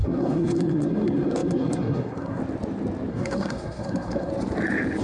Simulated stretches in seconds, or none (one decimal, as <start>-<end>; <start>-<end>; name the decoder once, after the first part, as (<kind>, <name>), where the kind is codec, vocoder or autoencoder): 0.0-2.4 (codec, SNAC); 3.1-4.3